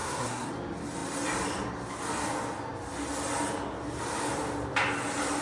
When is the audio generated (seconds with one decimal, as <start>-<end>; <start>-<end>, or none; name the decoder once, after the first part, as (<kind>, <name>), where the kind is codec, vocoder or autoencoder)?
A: 0.0-0.5 (codec, SNAC)